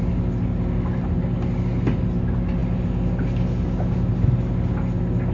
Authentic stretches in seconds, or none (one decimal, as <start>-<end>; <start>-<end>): 0.0-5.3